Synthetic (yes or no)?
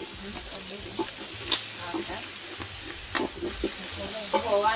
no